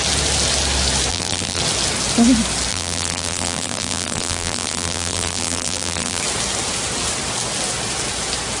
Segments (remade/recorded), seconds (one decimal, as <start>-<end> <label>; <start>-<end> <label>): 0.0-1.1 recorded; 1.1-1.6 remade; 1.6-2.7 recorded; 2.7-6.2 remade; 6.2-8.6 recorded